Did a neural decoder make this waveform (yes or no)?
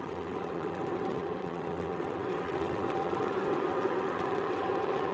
yes